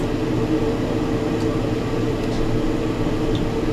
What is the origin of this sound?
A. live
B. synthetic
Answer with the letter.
A